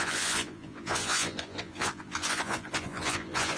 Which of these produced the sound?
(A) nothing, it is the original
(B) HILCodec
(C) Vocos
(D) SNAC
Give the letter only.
C